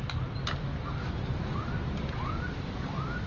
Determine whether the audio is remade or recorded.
recorded